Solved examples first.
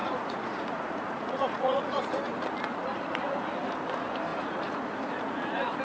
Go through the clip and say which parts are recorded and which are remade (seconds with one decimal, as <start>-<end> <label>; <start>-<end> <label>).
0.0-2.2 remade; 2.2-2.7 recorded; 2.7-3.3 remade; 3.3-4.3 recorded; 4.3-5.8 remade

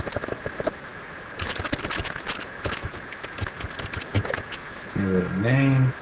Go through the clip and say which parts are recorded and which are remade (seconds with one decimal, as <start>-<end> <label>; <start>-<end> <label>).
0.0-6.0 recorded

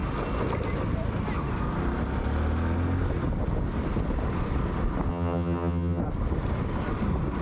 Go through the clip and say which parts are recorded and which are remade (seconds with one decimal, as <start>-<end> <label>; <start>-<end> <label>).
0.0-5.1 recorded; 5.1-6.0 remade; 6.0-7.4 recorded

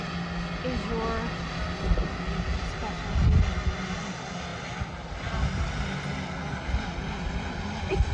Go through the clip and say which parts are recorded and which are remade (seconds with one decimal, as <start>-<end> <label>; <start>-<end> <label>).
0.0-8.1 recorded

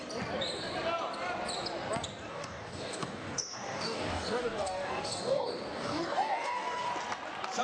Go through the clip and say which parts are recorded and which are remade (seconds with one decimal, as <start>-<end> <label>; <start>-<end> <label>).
0.0-2.3 recorded; 2.3-6.9 remade; 6.9-7.6 recorded